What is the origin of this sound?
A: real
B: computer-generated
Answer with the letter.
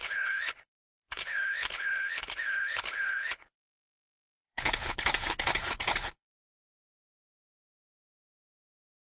B